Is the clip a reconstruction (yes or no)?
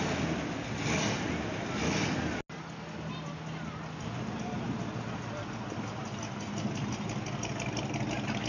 no